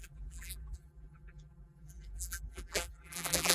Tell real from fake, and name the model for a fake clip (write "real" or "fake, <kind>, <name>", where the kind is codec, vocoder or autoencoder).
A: fake, vocoder, BigVGAN v2